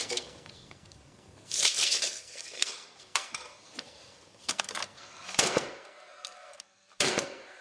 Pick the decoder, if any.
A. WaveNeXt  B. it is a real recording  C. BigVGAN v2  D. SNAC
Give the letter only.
D